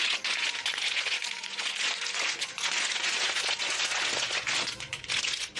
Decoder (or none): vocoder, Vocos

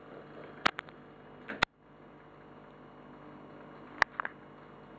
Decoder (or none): none